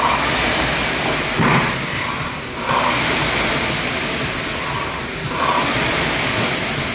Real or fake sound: real